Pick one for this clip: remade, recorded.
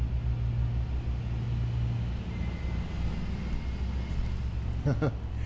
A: recorded